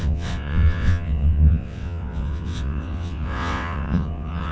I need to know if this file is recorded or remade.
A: remade